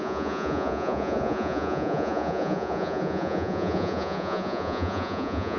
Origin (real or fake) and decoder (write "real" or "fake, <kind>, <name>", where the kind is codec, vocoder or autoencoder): fake, vocoder, Vocos